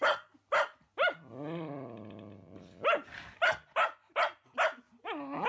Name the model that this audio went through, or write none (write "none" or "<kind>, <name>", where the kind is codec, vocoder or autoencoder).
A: none